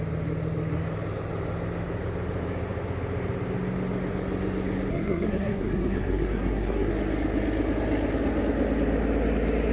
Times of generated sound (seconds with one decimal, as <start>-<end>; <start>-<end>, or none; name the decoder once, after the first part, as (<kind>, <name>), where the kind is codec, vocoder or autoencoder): 4.9-6.9 (codec, SNAC)